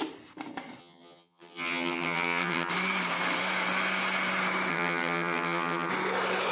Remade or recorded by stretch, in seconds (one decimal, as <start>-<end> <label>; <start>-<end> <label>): 0.0-0.8 recorded; 0.8-2.7 remade; 2.7-4.7 recorded; 4.7-5.9 remade; 5.9-6.5 recorded